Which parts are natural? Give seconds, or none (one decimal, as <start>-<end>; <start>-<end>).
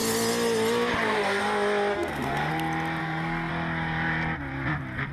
0.0-1.9; 2.5-3.0; 3.5-5.1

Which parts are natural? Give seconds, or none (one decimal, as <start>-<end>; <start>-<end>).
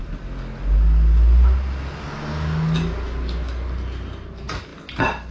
0.0-5.3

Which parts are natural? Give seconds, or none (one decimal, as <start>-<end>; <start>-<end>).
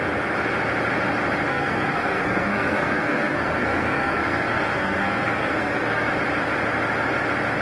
0.0-1.5; 6.1-7.6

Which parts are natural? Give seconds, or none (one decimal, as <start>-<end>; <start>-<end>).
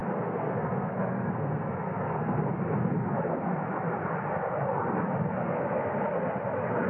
2.5-5.4; 6.0-6.9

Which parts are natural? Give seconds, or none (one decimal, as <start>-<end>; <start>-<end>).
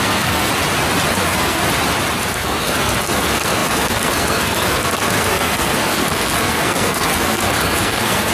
0.5-1.1; 1.6-2.3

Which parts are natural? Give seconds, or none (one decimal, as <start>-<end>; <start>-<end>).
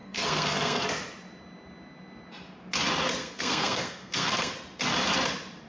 0.8-3.2; 4.5-5.7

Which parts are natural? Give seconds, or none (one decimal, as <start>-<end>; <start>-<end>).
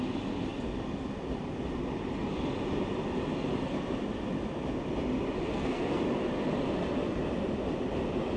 0.0-5.5; 6.0-8.4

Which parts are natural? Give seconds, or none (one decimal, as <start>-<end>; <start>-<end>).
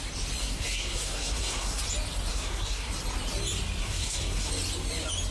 0.0-0.4; 1.8-2.3; 2.9-3.8; 4.5-5.3